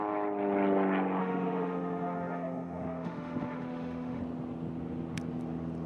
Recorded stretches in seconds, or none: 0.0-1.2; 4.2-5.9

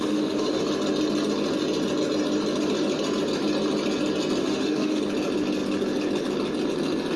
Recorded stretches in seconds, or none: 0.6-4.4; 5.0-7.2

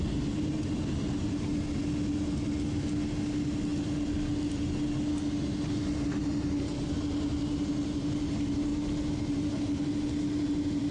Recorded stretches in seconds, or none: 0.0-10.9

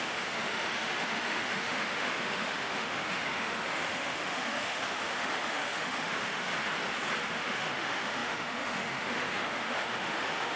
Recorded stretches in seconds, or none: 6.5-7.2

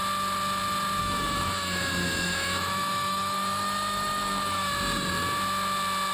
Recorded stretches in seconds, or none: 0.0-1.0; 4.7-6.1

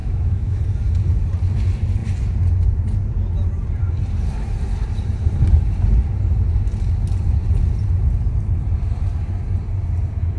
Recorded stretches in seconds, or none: 0.6-10.4

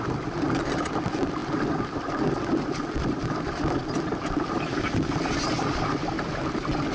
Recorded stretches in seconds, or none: 0.0-6.9